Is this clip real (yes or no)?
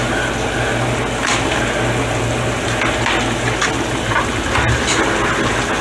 yes